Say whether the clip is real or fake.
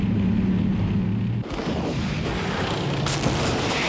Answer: real